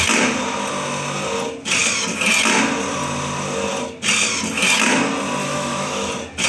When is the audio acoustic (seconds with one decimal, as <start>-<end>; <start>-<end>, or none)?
0.0-5.4; 6.1-6.5